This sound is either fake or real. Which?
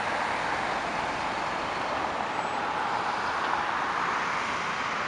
real